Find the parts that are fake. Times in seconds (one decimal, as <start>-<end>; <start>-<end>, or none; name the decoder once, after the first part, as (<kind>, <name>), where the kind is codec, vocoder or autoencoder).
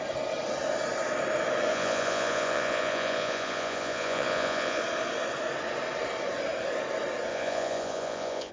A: 1.7-4.8 (vocoder, Vocos); 7.3-8.5